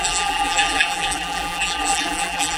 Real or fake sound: fake